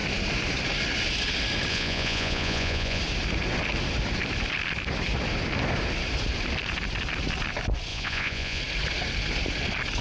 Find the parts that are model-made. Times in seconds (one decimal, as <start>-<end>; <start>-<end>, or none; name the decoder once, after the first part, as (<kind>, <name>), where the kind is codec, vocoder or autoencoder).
1.7-3.0 (vocoder, Vocos); 7.9-8.6